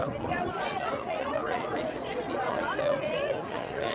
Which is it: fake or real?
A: fake